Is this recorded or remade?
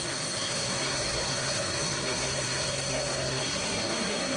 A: remade